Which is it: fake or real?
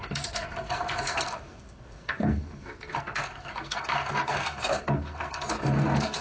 fake